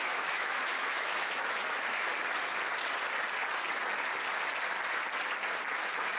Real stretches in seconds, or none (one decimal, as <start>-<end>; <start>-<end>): 2.1-5.8

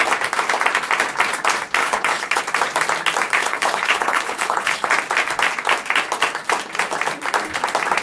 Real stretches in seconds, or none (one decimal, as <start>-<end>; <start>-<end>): 0.0-1.8; 2.4-3.4; 4.9-8.0

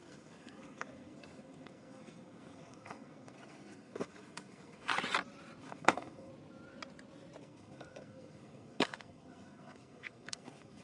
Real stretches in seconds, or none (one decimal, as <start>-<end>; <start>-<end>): 4.9-5.6; 6.3-7.4

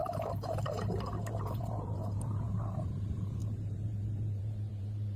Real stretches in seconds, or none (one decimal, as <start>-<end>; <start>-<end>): 0.0-0.8

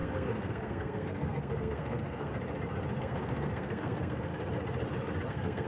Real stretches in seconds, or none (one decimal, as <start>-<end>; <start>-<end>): 2.3-3.0; 4.3-5.3